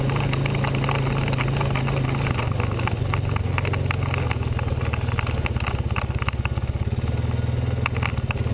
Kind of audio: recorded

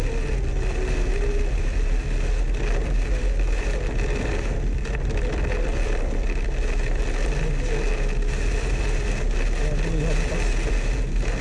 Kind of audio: recorded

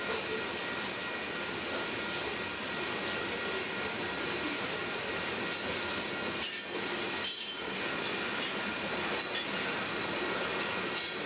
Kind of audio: recorded